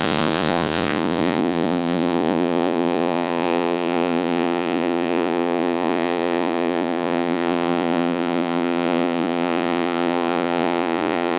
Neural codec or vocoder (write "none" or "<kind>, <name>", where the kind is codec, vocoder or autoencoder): vocoder, Vocos